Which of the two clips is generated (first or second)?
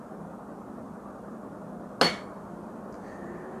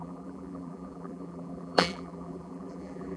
second